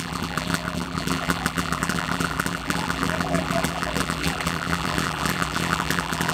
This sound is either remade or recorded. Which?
remade